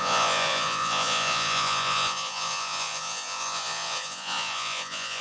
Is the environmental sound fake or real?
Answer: fake